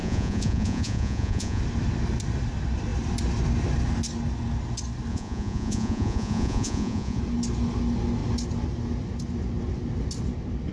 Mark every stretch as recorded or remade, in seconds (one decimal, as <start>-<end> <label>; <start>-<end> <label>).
0.0-1.6 remade; 1.6-5.1 recorded; 5.1-7.2 remade; 7.2-10.7 recorded